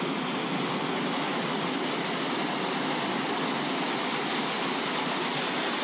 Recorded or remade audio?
recorded